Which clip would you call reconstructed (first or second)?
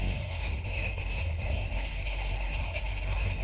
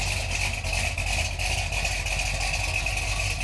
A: first